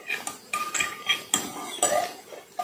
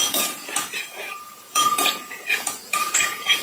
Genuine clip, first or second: first